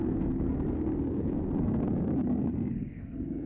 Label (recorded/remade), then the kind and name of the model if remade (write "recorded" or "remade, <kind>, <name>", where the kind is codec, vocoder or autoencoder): remade, codec, SNAC